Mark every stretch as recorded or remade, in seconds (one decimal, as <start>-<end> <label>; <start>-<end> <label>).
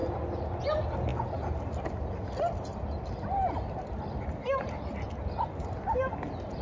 0.0-6.6 recorded